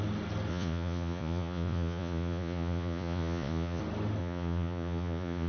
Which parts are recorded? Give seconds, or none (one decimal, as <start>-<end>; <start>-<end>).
0.0-0.5; 3.8-4.2

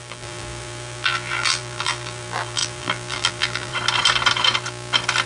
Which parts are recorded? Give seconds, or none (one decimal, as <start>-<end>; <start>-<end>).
3.7-5.3